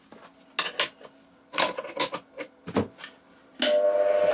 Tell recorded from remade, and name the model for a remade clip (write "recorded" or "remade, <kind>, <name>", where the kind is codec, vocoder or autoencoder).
recorded